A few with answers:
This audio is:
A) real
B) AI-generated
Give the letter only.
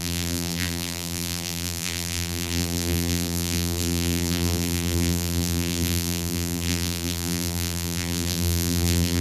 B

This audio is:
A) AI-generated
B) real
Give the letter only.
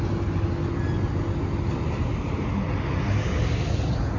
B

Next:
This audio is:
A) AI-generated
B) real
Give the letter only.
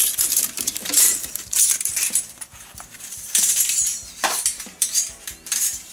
A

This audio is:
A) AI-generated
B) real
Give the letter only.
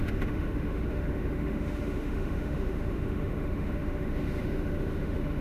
A